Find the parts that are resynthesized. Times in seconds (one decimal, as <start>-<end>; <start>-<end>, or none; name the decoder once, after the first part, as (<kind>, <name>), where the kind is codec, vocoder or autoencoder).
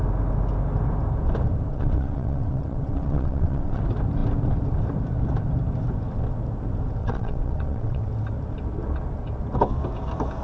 1.7-3.8 (vocoder, WaveNeXt); 7.0-8.1